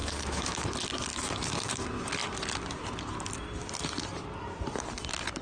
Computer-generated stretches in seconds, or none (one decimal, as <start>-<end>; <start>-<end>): 0.0-0.7; 1.1-1.8